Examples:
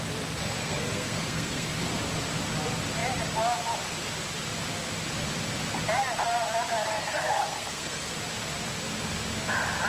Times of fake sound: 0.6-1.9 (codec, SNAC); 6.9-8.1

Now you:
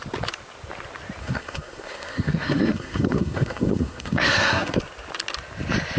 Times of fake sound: 1.2-4.8 (codec, SNAC)

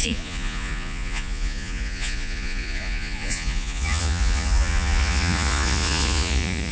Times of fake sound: 0.0-6.7 (vocoder, Vocos)

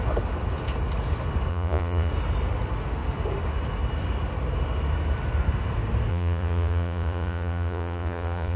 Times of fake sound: 1.5-2.1 (vocoder, Vocos); 6.1-8.6

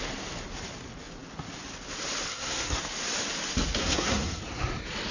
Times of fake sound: 2.3-2.8 (codec, SNAC); 3.8-4.4

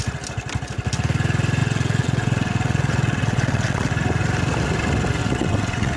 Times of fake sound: 1.6-3.9 (vocoder, WaveNeXt); 5.2-6.0

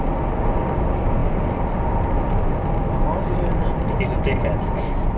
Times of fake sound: none

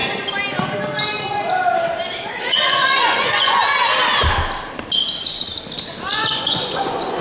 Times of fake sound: 2.4-3.6 (vocoder, Vocos); 6.1-7.2